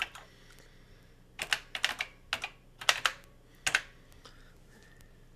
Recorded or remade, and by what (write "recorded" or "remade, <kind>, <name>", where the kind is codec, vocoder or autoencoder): recorded